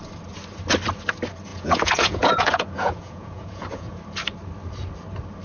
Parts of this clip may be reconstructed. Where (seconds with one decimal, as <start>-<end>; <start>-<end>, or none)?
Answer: 1.5-4.0